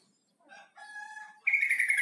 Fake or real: real